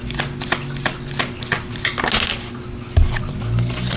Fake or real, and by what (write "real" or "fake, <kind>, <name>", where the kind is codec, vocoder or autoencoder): real